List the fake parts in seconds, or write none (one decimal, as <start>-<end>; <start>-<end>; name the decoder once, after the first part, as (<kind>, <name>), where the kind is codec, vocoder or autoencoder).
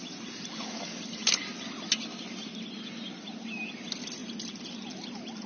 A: none